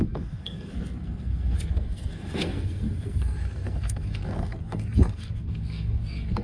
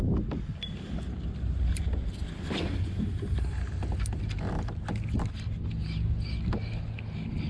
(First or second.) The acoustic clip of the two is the second